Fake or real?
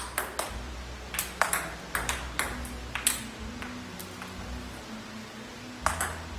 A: real